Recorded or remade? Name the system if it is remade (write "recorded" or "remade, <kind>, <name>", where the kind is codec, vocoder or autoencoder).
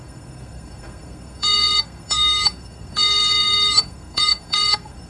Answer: remade, codec, SNAC